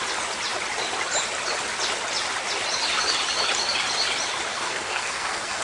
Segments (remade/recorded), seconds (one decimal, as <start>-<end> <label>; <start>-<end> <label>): 0.0-4.5 recorded; 4.5-5.6 remade